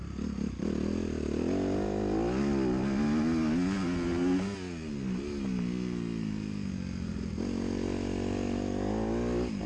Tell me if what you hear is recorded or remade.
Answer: recorded